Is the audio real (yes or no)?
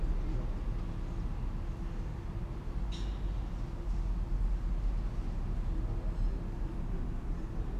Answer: yes